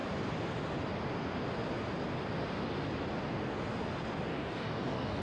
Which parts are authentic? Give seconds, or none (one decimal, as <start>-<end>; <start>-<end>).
0.0-4.3